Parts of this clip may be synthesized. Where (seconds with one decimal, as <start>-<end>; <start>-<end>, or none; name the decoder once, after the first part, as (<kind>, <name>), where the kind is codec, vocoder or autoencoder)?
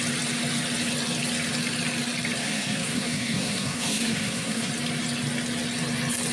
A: 2.4-4.7 (codec, SNAC)